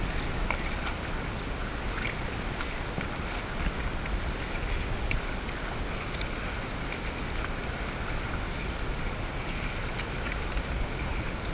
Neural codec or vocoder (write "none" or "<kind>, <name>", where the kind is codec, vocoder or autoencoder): none